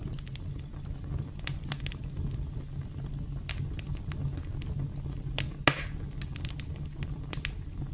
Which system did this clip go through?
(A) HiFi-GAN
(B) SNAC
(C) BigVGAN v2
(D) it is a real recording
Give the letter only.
D